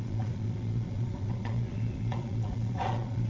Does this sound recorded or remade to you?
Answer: remade